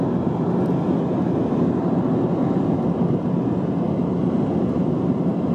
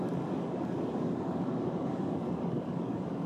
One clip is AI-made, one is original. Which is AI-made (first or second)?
second